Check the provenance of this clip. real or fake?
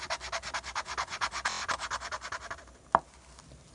real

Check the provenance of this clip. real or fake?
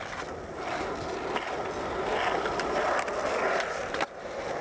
real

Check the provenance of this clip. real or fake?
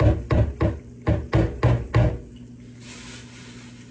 real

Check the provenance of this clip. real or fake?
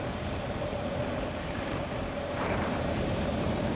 fake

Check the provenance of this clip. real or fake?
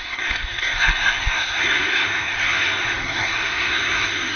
fake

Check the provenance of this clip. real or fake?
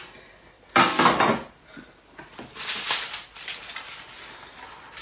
real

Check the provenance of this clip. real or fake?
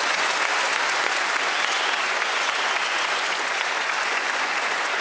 fake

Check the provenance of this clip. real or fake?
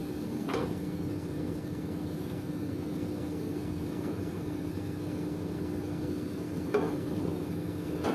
fake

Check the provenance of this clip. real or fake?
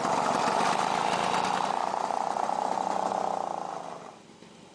real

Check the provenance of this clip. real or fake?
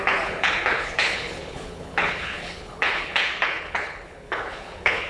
fake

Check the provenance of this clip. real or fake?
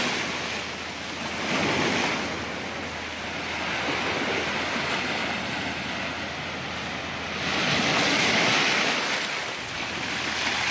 real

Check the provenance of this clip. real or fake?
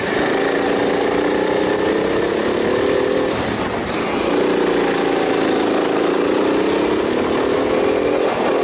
real